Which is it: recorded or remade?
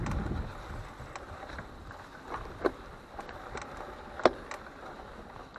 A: recorded